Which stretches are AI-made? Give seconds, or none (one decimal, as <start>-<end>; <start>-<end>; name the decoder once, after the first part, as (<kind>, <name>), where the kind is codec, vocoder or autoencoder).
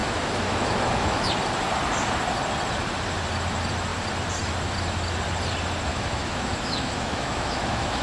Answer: 0.0-1.3 (autoencoder, DAC-VAE); 5.9-8.0